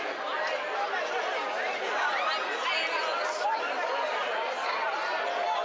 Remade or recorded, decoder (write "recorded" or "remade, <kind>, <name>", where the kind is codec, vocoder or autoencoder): recorded